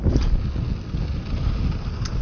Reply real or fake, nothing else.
real